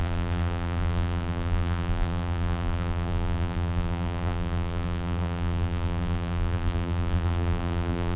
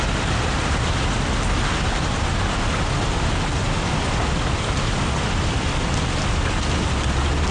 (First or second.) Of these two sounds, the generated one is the first